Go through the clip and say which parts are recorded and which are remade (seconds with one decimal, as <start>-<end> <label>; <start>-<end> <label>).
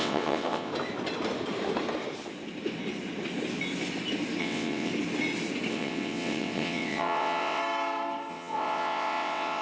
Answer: 0.0-0.7 remade; 0.7-4.4 recorded; 4.4-4.9 remade; 4.9-5.7 recorded; 5.7-7.6 remade; 7.6-8.3 recorded; 8.3-9.6 remade